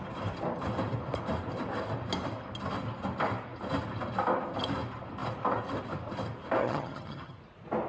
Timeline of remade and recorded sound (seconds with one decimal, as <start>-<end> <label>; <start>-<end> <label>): 0.0-6.6 recorded; 6.6-7.4 remade; 7.4-7.9 recorded